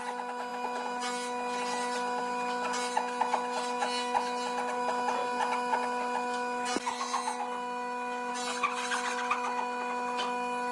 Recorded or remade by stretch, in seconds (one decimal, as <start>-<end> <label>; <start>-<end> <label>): 0.0-10.7 recorded